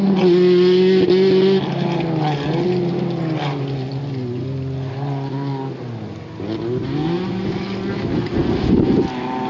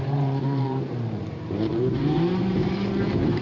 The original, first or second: first